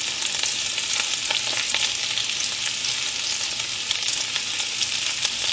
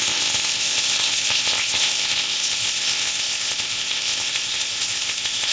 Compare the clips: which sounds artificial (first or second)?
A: second